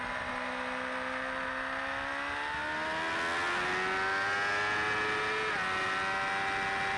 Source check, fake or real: real